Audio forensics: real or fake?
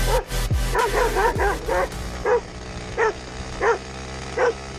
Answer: real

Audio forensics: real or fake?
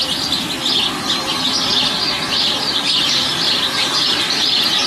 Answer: real